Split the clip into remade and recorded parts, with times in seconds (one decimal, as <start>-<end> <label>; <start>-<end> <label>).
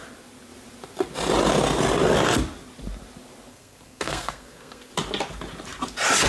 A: 0.0-3.5 recorded; 3.5-4.9 remade; 4.9-6.3 recorded